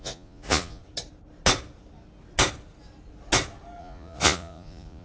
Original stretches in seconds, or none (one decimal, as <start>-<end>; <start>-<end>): 0.8-3.8